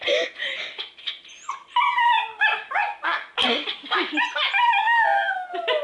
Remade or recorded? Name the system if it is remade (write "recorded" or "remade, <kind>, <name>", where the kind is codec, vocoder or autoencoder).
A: recorded